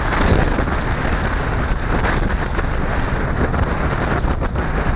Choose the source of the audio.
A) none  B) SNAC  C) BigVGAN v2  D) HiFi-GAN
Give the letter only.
A